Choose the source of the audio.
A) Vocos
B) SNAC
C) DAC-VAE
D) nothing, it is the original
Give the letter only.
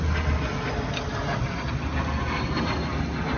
D